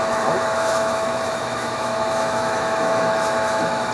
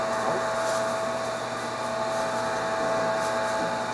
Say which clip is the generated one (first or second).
first